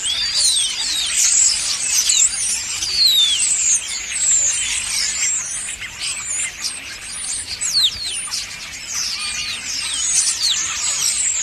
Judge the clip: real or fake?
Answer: real